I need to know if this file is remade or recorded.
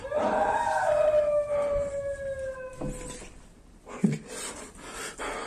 recorded